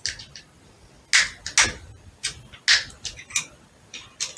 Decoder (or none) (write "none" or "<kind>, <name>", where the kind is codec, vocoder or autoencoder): none